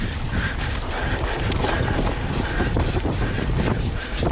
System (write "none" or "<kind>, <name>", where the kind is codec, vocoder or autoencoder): vocoder, BigVGAN v2